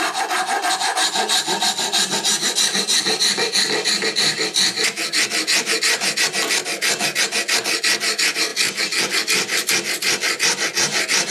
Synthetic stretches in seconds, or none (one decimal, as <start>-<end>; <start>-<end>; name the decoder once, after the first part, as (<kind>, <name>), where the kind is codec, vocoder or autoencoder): none